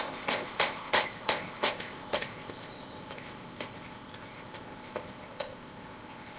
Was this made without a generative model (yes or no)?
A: no